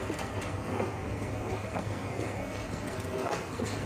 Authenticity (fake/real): fake